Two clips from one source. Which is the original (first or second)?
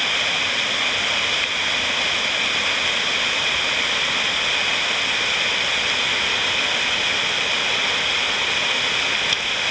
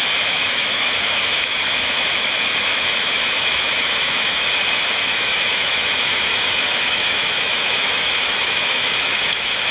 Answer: first